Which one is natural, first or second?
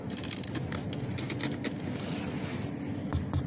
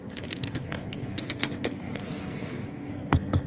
first